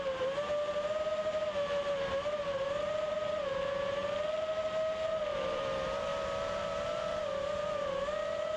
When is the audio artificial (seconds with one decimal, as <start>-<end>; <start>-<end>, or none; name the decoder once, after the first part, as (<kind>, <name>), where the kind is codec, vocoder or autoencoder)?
0.0-4.0 (vocoder, BigVGAN v2); 5.3-8.6